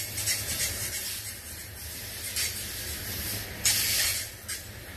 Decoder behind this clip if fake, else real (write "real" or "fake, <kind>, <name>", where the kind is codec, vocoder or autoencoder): real